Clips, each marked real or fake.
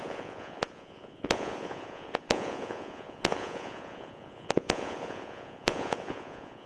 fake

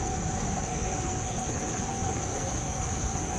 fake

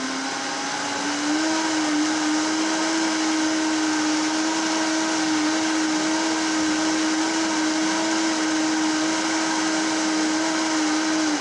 real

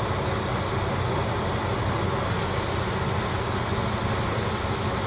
real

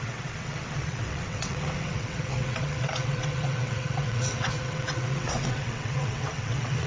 fake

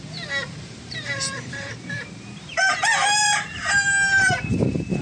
fake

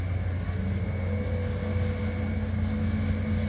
real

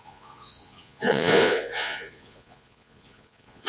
fake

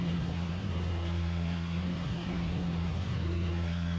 fake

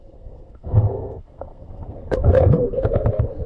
fake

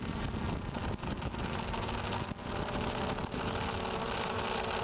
real